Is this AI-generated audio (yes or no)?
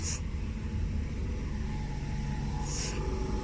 no